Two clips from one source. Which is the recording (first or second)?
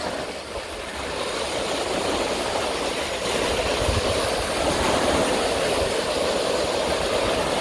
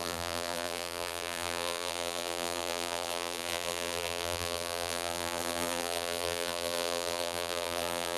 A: first